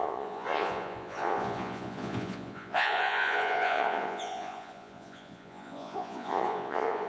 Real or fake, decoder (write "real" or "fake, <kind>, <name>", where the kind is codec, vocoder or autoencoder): fake, vocoder, Vocos